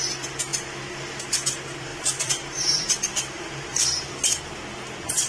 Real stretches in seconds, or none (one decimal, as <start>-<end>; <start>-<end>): 0.0-0.5; 1.2-1.9; 4.1-5.3